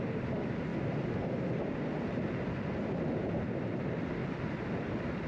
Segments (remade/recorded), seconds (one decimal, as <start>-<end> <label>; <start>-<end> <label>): 0.0-0.7 remade; 0.7-3.4 recorded; 3.4-4.2 remade; 4.2-5.3 recorded

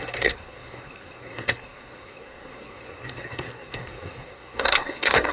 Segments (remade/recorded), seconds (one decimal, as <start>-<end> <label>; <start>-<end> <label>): 0.0-5.3 remade

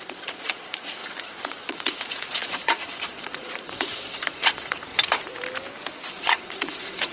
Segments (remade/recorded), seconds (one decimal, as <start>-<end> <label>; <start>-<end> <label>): 0.0-4.9 remade; 4.9-6.1 recorded; 6.1-7.1 remade

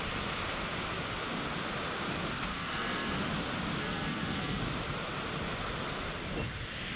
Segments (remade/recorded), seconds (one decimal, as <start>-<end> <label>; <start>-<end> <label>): 0.0-2.5 recorded; 2.5-3.2 remade; 3.2-3.8 recorded; 3.8-4.6 remade; 4.6-7.0 recorded

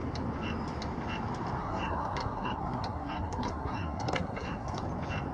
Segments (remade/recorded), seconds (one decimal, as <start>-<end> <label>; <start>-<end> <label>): 0.0-1.6 recorded; 1.6-4.8 remade; 4.8-5.3 recorded

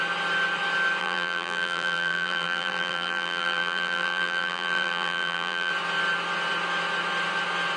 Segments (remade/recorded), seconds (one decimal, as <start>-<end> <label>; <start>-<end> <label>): 0.0-1.0 recorded; 1.0-5.7 remade; 5.7-7.8 recorded

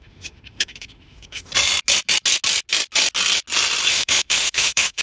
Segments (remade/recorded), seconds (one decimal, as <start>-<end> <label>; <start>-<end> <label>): 0.0-1.5 remade; 1.5-3.9 recorded; 3.9-5.0 remade

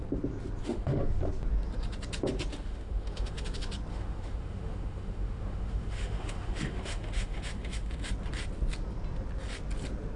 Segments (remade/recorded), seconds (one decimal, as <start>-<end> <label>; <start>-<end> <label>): 0.0-0.6 recorded; 0.6-1.2 remade; 1.2-2.5 recorded; 2.5-3.4 remade; 3.4-3.9 recorded; 3.9-8.1 remade; 8.1-10.2 recorded